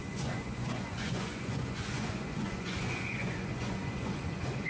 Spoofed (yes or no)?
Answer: yes